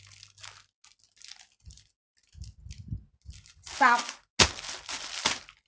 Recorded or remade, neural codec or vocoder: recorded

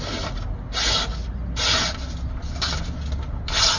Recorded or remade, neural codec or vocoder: recorded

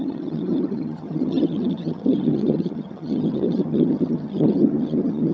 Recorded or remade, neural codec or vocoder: remade, vocoder, HiFi-GAN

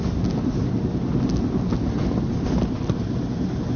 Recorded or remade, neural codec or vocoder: recorded